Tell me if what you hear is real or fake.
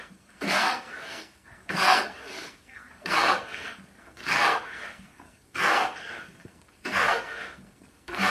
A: fake